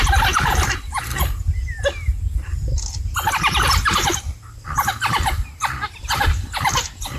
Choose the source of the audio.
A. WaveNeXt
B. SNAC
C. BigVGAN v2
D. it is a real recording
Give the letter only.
D